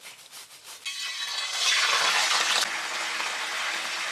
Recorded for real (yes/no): yes